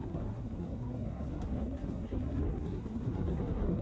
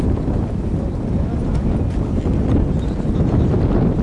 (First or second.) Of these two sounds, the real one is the second